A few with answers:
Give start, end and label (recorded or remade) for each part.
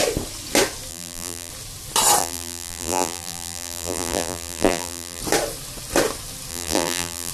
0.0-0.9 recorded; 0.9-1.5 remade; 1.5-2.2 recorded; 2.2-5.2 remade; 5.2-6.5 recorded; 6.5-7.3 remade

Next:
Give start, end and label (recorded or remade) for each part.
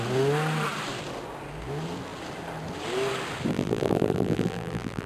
0.0-3.5 recorded; 3.5-5.1 remade